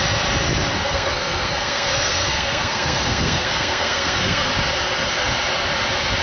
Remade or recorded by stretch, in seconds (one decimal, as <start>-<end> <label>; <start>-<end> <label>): 0.0-0.8 recorded; 0.8-4.5 remade; 4.5-6.2 recorded